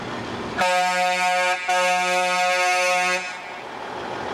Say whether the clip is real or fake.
real